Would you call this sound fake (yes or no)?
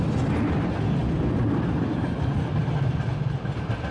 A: no